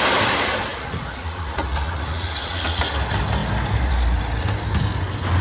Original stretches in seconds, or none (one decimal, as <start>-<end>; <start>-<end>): 0.0-0.7; 2.8-5.4

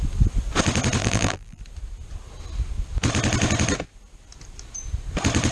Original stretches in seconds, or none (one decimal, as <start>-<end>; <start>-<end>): 0.0-1.0; 1.6-5.5

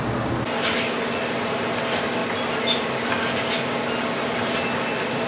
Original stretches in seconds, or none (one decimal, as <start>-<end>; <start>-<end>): 0.0-5.3

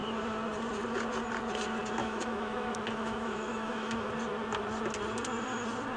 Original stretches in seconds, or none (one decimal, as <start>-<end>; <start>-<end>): 0.0-2.0; 4.1-6.0

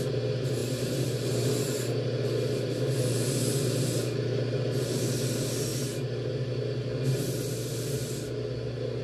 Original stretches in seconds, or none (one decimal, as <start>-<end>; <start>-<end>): 0.0-9.0

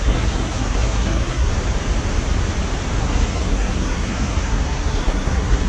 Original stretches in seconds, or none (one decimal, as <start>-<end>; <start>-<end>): 1.5-3.0